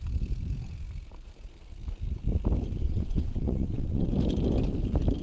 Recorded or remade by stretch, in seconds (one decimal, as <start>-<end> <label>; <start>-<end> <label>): 0.0-2.8 recorded; 2.8-4.1 remade; 4.1-5.2 recorded